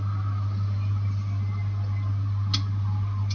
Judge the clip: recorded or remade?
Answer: recorded